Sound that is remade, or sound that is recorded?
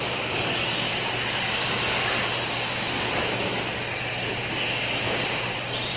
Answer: recorded